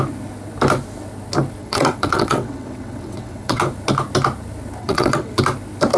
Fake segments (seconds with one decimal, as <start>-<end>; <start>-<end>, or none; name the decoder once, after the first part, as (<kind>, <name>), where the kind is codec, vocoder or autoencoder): 1.6-3.6 (vocoder, WaveNeXt); 4.8-5.4